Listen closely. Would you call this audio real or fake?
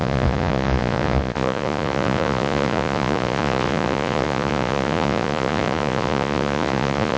fake